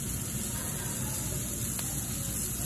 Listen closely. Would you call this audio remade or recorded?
recorded